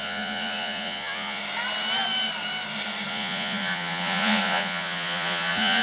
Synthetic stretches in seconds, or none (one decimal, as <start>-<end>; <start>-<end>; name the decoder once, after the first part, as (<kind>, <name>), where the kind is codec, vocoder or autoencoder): 0.0-1.4 (vocoder, Vocos); 3.1-5.8